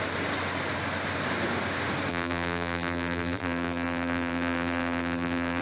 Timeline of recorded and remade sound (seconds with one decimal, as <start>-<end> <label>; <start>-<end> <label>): 0.0-2.1 recorded; 2.1-5.6 remade